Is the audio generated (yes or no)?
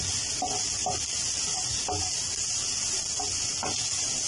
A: no